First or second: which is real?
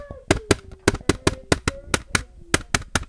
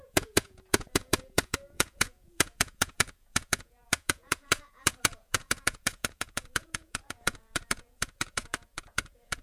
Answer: first